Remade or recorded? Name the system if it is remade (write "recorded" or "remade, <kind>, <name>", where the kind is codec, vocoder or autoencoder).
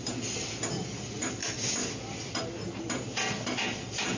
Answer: recorded